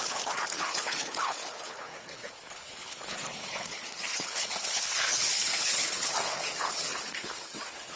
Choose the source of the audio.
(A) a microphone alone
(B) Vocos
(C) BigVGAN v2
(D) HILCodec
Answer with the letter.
D